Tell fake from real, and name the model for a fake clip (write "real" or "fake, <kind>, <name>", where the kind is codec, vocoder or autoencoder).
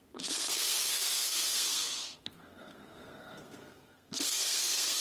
fake, codec, SNAC